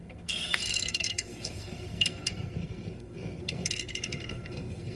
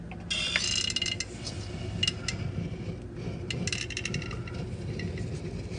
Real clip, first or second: second